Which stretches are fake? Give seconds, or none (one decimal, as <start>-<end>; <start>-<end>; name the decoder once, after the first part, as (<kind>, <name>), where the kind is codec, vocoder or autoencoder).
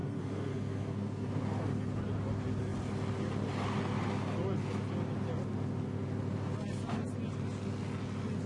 0.0-1.4 (codec, SNAC)